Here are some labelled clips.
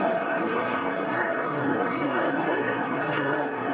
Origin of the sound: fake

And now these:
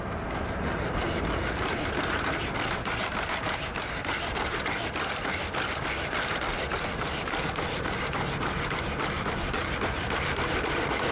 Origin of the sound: real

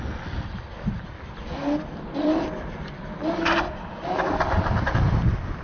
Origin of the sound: real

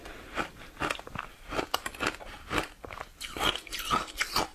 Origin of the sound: real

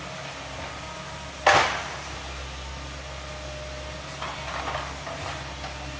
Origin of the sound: real